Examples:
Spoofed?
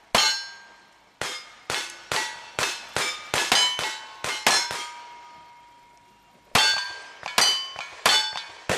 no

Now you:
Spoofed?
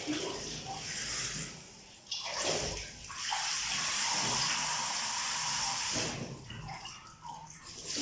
no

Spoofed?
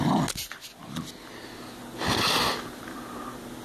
no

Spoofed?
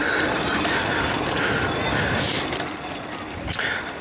no